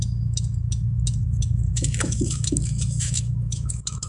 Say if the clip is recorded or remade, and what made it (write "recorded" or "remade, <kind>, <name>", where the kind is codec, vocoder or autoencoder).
remade, autoencoder, DAC-VAE